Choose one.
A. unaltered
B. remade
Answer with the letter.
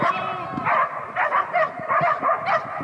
A